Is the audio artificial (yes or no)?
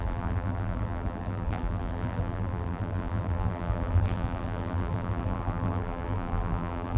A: yes